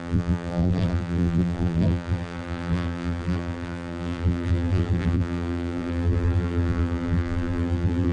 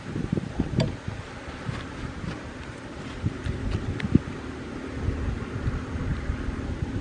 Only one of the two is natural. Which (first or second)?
second